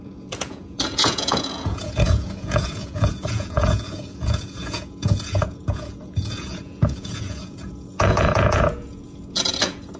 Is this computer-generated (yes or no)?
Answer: yes